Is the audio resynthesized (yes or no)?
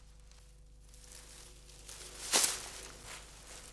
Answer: no